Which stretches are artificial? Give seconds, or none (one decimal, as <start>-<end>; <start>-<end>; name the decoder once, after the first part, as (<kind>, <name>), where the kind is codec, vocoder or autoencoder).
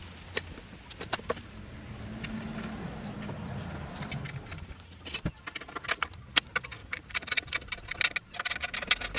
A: 6.8-7.4 (vocoder, Vocos)